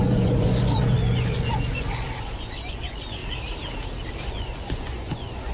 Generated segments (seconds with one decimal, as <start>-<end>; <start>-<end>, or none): 0.0-3.2; 4.3-5.5